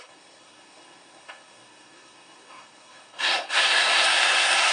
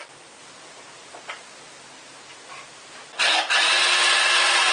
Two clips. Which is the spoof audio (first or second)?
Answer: first